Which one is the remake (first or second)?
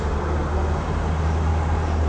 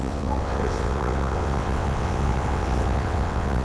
second